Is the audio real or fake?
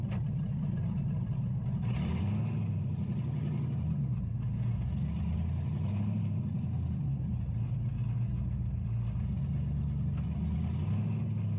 real